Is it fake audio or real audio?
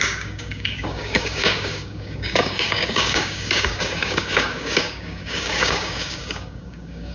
fake